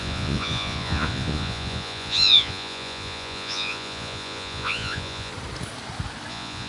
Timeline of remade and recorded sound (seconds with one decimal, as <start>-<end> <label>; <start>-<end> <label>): 0.0-5.3 remade; 5.3-6.3 recorded; 6.3-6.7 remade